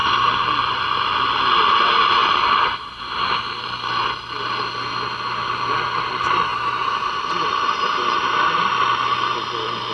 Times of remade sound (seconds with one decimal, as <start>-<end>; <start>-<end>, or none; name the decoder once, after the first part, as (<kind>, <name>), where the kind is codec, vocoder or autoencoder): 0.0-0.5 (vocoder, BigVGAN v2); 2.2-3.0; 6.5-8.4